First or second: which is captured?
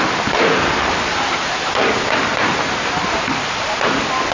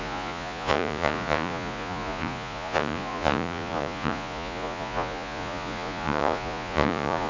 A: first